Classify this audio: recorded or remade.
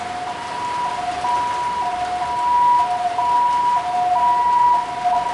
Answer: recorded